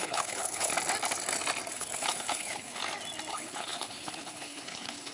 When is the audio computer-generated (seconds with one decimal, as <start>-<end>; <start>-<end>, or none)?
0.0-0.7; 1.7-2.8; 3.3-5.1